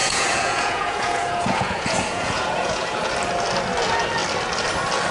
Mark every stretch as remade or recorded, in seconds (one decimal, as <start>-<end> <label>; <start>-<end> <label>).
0.0-3.1 remade; 3.1-5.1 recorded